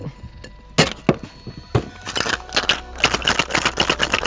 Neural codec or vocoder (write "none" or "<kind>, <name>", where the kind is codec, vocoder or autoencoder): none